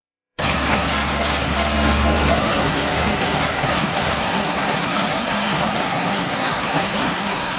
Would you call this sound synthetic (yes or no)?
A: yes